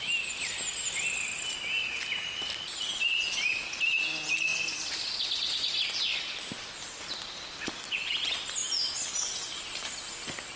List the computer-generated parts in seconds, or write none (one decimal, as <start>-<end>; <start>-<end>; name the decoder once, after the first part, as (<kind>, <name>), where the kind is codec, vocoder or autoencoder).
none